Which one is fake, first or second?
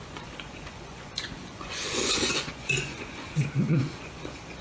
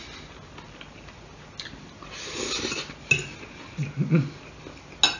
first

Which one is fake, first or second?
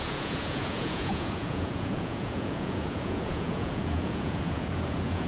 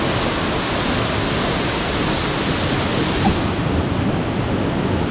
first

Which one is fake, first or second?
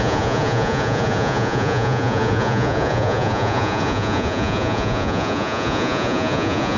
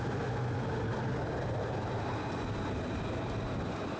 first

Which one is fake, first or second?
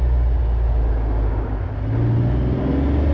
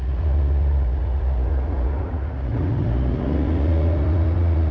second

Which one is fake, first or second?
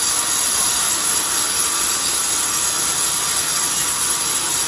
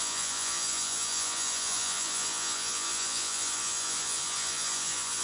second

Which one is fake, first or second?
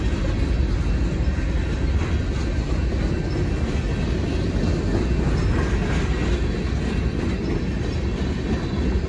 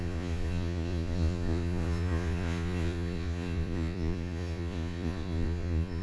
second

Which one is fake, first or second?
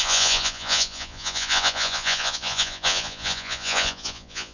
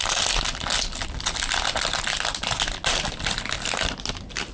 first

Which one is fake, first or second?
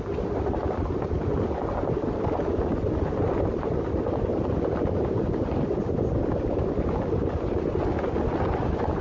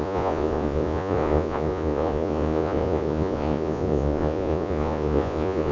second